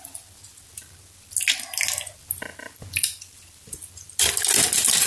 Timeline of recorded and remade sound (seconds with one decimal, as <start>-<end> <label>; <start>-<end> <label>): 0.0-5.1 recorded